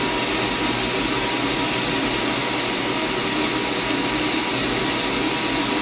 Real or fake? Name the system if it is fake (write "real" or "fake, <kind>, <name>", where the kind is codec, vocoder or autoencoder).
real